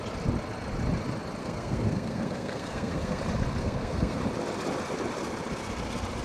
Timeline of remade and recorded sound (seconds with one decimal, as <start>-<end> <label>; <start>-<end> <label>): 0.0-1.4 recorded; 1.4-3.2 remade; 3.2-3.6 recorded; 3.6-4.2 remade; 4.2-6.2 recorded